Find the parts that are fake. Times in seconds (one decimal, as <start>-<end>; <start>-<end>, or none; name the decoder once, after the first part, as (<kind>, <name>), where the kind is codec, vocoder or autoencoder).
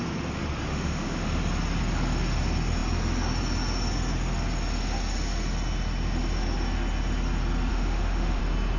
0.7-1.4 (autoencoder, DAC-VAE); 7.7-8.4